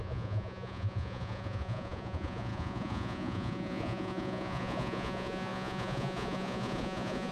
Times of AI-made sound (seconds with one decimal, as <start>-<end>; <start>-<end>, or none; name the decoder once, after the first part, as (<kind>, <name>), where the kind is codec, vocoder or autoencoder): 0.0-7.3 (vocoder, Vocos)